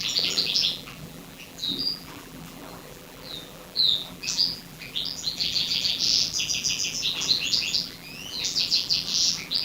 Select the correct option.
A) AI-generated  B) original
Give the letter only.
A